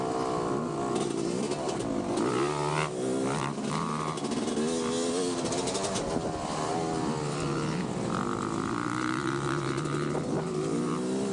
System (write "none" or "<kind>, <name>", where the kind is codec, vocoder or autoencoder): none